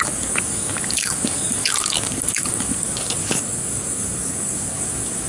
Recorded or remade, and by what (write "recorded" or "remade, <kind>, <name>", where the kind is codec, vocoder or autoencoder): remade, codec, DAC